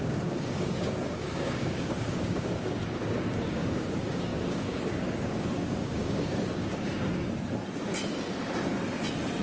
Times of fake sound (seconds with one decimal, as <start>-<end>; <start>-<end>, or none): 0.0-6.9